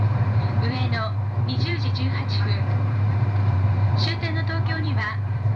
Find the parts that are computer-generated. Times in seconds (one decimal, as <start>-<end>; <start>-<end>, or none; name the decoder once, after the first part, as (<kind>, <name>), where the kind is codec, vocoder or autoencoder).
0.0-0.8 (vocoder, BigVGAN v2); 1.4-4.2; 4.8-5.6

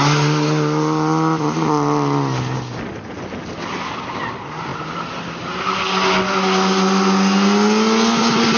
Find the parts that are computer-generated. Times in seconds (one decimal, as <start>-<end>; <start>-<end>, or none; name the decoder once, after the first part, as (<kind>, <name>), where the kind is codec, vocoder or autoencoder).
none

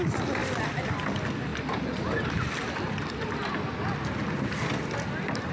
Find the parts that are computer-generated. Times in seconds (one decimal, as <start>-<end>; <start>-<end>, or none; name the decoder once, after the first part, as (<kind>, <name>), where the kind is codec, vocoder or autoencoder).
none